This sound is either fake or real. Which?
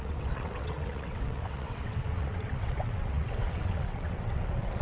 fake